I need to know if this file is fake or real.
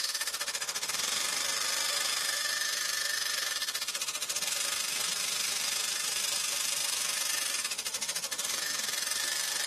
fake